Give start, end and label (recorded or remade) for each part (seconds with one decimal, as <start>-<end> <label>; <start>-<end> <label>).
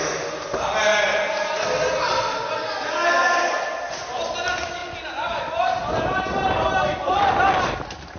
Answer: 0.0-8.2 recorded